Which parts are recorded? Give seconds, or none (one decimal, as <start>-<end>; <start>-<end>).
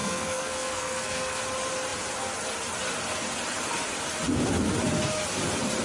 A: 1.4-5.8